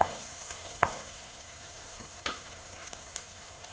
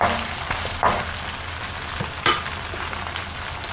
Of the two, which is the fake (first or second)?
first